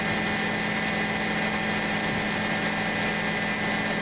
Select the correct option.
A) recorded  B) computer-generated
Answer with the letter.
A